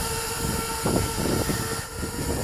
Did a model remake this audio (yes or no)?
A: no